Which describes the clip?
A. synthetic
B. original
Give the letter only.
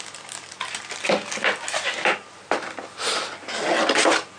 B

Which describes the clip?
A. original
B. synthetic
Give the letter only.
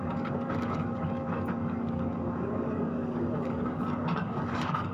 B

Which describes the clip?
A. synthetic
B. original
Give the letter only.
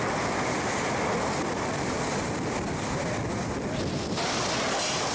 B